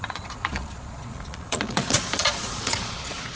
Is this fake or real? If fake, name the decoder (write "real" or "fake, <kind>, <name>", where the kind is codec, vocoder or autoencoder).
fake, vocoder, Vocos